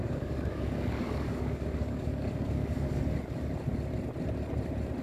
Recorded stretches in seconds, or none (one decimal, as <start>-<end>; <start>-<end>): 3.0-5.0